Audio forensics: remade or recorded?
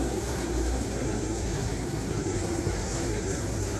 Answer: remade